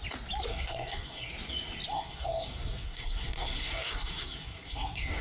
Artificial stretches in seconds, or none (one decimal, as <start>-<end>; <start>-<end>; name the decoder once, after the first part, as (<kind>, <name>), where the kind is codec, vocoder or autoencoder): 0.5-1.3 (codec, SNAC); 1.9-5.2